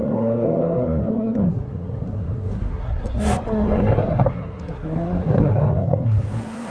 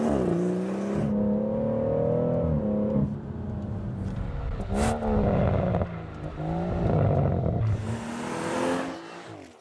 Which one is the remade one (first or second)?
first